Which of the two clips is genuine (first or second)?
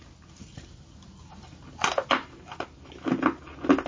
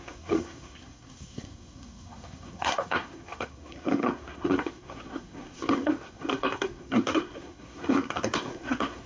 first